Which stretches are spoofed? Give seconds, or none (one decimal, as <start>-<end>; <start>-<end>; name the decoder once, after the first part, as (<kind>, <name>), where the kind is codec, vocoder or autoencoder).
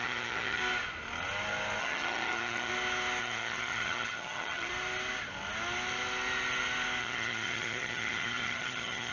0.0-0.6 (vocoder, HiFi-GAN); 1.8-2.7; 3.2-4.7; 7.0-9.1